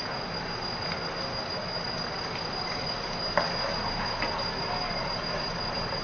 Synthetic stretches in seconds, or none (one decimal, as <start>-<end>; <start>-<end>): none